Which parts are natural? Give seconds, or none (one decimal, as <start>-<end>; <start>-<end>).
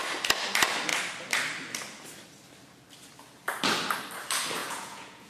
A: 0.0-4.6